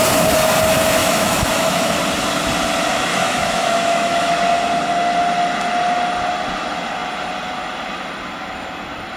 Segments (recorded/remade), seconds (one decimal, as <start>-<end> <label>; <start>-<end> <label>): 0.0-1.0 recorded; 1.0-1.9 remade; 1.9-3.1 recorded; 3.1-4.3 remade; 4.3-9.2 recorded

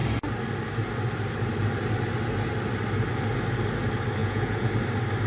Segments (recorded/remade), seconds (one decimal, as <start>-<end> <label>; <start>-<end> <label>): 0.0-4.2 recorded; 4.2-4.7 remade; 4.7-5.3 recorded

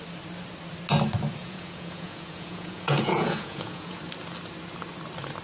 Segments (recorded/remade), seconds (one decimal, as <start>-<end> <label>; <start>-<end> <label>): 0.0-1.4 recorded; 1.4-4.0 remade; 4.0-5.4 recorded

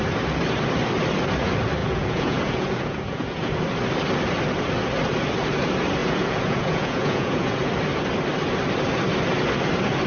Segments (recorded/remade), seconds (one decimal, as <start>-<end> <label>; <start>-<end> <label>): 0.0-1.8 recorded; 1.8-3.6 remade; 3.6-6.0 recorded; 6.0-7.7 remade; 7.7-10.1 recorded

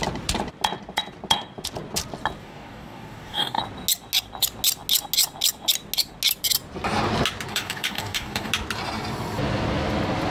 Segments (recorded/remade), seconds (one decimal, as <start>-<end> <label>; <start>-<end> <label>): 0.0-2.4 recorded; 2.4-3.6 remade; 3.6-7.5 recorded; 7.5-8.5 remade; 8.5-10.3 recorded